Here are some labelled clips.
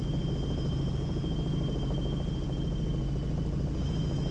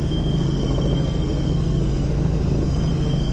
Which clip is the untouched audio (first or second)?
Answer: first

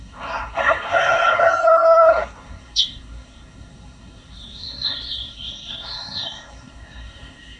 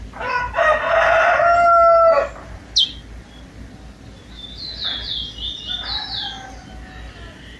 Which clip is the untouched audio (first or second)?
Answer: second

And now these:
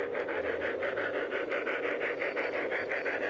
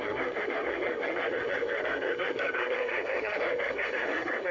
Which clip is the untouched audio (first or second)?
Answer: first